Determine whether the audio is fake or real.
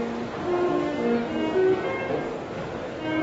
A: real